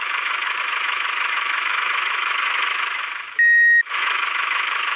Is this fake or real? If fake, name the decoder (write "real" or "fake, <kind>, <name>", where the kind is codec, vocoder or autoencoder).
fake, autoencoder, DAC-VAE